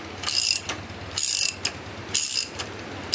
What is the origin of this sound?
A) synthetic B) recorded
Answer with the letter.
B